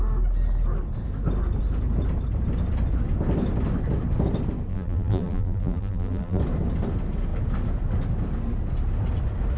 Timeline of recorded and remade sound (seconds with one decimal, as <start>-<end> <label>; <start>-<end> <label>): 0.0-4.7 recorded; 4.7-6.4 remade; 6.4-9.6 recorded

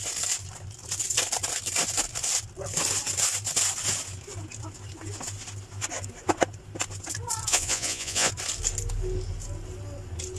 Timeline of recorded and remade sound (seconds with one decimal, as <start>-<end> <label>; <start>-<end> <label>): 0.0-7.5 recorded; 7.5-8.3 remade; 8.3-10.4 recorded

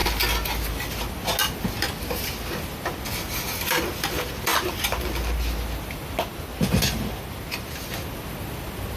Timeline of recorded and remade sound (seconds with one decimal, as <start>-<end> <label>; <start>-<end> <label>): 0.0-9.0 recorded

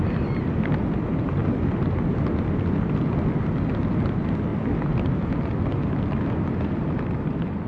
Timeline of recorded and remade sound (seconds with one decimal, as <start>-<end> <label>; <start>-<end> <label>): 0.0-7.7 recorded

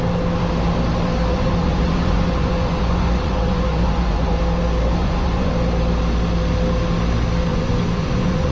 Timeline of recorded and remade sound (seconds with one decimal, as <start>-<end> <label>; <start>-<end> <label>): 0.0-1.3 recorded; 1.3-4.4 remade; 4.4-5.0 recorded; 5.0-5.5 remade; 5.5-7.5 recorded; 7.5-8.5 remade

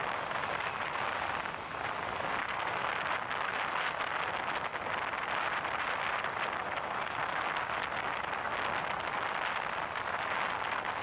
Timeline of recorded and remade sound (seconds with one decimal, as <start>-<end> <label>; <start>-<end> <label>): 0.0-2.4 recorded; 2.4-2.9 remade; 2.9-11.0 recorded

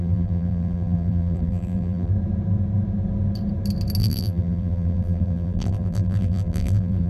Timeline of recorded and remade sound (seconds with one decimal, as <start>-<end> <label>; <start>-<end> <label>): 0.0-2.1 remade; 2.1-4.0 recorded; 4.0-7.1 remade